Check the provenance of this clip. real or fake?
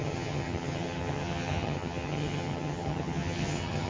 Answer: fake